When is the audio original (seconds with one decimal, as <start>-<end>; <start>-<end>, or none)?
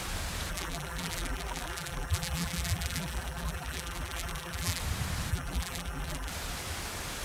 0.0-0.5; 4.8-5.3; 6.3-7.2